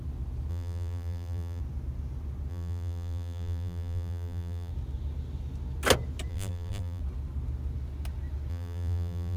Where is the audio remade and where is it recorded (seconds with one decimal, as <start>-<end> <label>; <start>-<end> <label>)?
0.0-0.5 recorded; 0.5-1.6 remade; 1.6-2.5 recorded; 2.5-4.7 remade; 4.7-6.3 recorded; 6.3-7.0 remade; 7.0-8.5 recorded; 8.5-9.4 remade